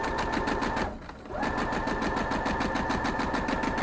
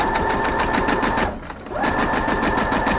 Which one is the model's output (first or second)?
second